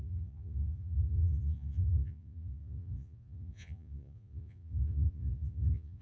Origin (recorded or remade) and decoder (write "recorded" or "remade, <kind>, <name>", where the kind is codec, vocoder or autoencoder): remade, vocoder, Vocos